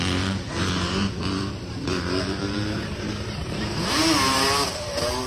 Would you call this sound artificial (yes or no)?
yes